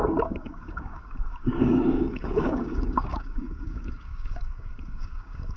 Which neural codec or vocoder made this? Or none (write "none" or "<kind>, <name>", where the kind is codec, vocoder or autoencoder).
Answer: codec, DAC